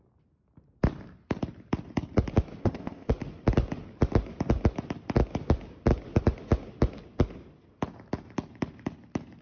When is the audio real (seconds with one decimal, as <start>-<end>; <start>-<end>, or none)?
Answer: 0.0-2.6; 3.1-9.4